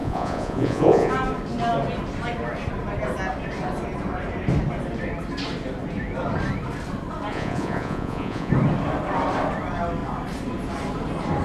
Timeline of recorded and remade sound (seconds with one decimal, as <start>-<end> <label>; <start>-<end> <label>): 0.0-1.1 remade; 1.1-7.3 recorded; 7.3-8.5 remade; 8.5-11.4 recorded